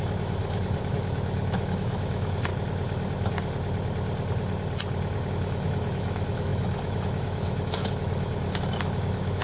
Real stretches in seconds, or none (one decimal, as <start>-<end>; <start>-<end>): 2.5-5.3